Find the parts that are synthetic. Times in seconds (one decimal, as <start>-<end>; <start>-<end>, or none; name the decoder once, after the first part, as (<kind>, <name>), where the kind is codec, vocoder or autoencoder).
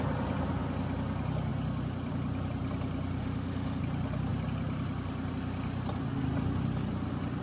3.2-3.8 (autoencoder, DAC-VAE)